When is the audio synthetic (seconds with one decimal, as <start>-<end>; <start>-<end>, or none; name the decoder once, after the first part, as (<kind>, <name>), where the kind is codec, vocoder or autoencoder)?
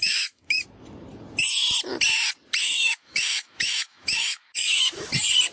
0.0-0.6 (autoencoder, DAC-VAE); 2.6-4.8